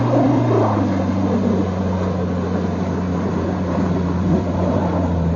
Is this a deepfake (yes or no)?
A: yes